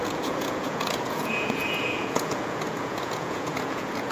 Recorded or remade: remade